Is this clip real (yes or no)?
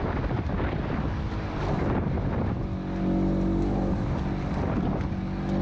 yes